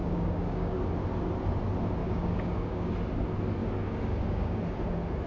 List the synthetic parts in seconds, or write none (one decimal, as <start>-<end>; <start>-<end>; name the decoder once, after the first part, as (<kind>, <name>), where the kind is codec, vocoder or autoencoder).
0.0-0.8 (codec, DAC); 2.0-2.9; 3.6-4.6

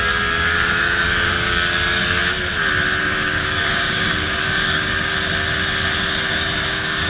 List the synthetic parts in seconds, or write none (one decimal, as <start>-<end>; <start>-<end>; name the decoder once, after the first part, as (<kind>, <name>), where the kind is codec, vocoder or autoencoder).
0.0-2.2 (codec, DAC); 3.0-5.1; 6.3-7.1

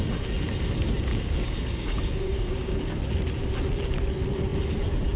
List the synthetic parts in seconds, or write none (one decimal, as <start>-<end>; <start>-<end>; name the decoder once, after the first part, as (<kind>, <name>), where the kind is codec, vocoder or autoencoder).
1.1-2.8 (codec, DAC)

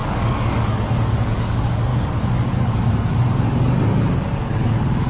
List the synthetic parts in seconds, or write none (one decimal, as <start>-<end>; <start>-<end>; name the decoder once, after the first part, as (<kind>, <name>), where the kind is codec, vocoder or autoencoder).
0.0-5.1 (codec, DAC)

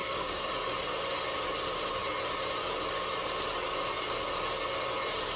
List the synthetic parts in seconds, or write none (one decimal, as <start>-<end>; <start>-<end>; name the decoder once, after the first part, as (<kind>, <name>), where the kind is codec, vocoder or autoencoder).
0.0-0.5 (codec, DAC)